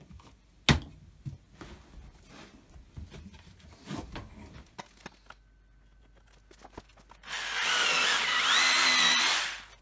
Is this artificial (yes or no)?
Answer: no